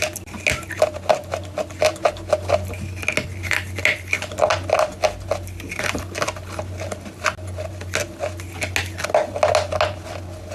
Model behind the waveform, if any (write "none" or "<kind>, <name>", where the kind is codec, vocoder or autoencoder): none